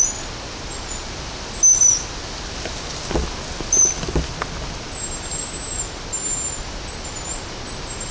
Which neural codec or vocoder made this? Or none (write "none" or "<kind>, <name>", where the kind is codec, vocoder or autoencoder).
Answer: none